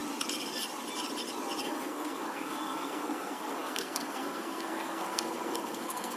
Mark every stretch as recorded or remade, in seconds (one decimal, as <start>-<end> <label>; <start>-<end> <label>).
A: 0.0-1.6 recorded; 1.6-6.2 remade